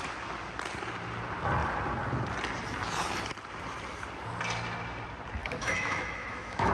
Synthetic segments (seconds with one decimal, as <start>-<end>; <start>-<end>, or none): 5.4-6.7